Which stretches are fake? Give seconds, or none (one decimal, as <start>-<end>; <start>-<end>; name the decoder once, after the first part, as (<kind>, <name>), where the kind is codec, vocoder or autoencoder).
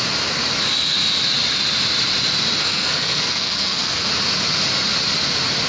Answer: 2.6-4.1 (codec, SNAC)